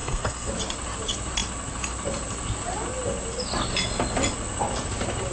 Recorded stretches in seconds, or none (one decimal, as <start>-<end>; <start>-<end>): 0.5-5.3